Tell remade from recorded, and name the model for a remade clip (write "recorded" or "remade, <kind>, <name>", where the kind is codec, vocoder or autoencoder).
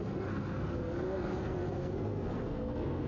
remade, codec, SNAC